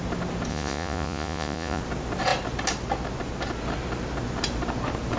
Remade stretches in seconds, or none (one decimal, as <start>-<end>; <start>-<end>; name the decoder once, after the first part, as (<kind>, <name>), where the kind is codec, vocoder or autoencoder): 0.5-1.8 (vocoder, Vocos)